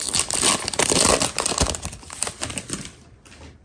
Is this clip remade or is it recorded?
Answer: recorded